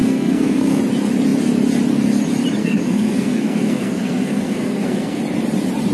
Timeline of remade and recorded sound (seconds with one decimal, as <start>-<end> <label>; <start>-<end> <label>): 0.0-0.8 remade; 0.8-2.6 recorded; 2.6-5.2 remade; 5.2-5.9 recorded